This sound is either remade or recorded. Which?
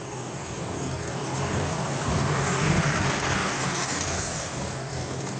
remade